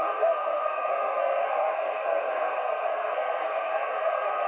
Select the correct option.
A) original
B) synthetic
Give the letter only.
B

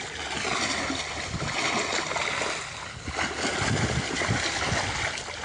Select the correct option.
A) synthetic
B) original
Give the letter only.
B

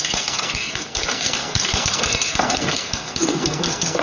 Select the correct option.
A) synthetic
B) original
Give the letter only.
A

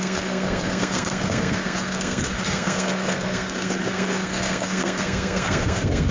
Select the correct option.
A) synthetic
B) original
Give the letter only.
A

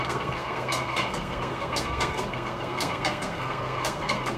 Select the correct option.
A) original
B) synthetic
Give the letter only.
B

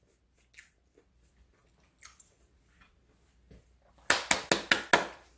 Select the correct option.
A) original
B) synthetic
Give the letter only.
A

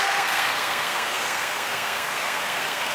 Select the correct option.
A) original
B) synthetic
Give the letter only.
B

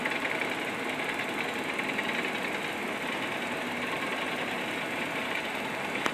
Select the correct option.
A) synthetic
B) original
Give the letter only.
B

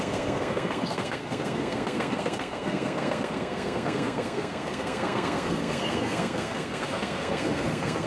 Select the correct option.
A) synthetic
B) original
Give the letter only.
A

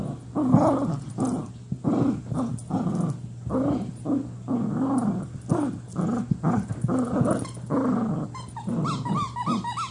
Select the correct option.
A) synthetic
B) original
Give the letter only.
B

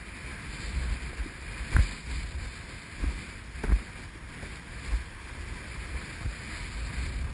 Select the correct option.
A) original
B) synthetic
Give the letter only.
A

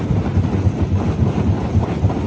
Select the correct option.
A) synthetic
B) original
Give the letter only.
B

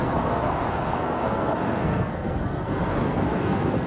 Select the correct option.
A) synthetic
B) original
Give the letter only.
A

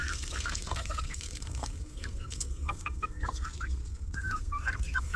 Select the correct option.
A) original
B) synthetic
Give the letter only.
B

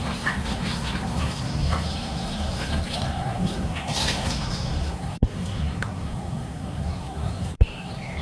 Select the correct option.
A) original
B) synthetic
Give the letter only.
B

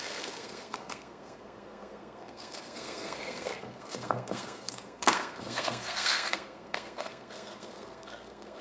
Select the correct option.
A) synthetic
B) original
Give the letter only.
A